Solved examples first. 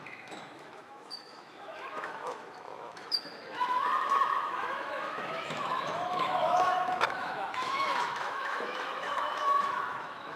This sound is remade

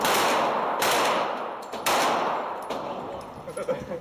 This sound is recorded